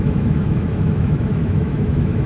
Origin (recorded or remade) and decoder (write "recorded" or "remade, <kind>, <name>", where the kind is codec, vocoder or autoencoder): remade, autoencoder, DAC-VAE